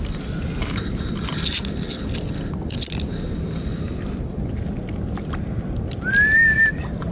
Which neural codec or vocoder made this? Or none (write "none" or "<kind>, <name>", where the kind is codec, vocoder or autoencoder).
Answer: none